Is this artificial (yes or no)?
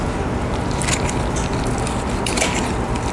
no